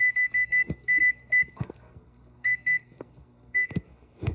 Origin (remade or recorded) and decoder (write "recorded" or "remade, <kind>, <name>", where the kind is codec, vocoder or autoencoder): remade, codec, SNAC